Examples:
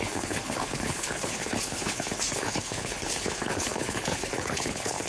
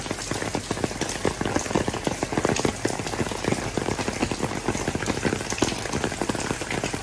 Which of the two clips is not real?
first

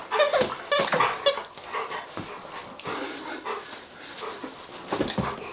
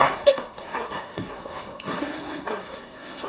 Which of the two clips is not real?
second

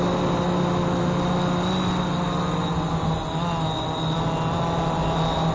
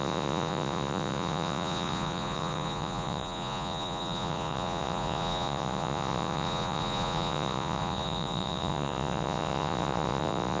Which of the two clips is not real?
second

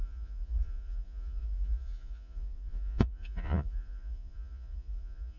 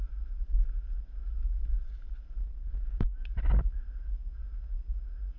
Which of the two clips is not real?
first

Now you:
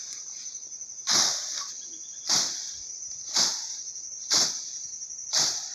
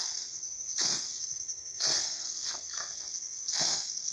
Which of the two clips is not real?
second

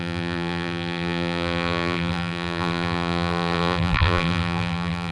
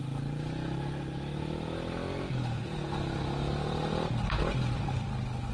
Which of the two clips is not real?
first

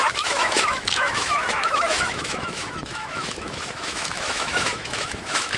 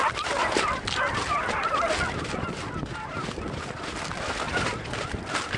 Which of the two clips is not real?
first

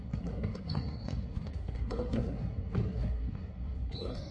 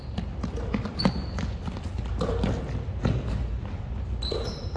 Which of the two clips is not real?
first